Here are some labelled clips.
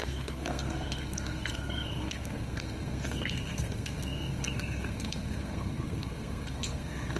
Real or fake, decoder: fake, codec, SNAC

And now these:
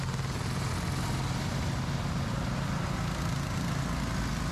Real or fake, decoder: real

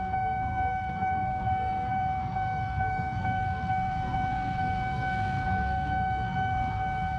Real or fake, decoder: fake, codec, SNAC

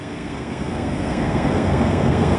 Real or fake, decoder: fake, codec, SNAC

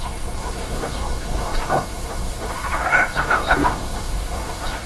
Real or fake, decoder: fake, codec, SNAC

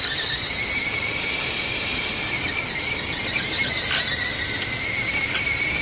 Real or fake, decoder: real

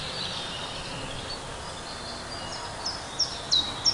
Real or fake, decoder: real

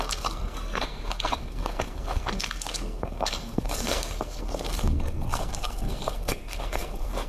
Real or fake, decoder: fake, codec, SNAC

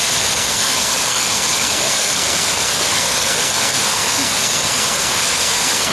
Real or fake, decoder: fake, codec, SNAC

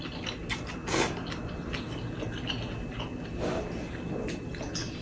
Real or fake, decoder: real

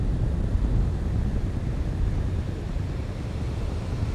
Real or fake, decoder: real